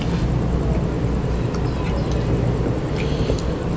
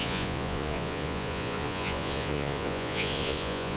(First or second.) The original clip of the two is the first